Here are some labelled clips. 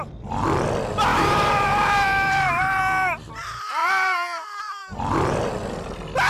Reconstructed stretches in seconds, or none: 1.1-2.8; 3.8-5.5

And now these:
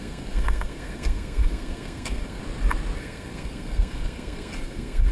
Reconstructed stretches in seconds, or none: 0.0-2.4; 3.0-5.1

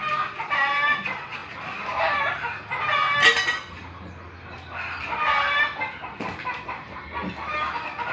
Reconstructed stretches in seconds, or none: none

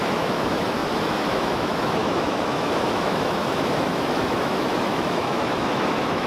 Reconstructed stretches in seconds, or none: 0.0-6.3

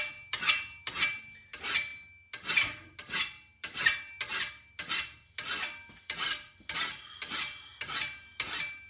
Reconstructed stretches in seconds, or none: none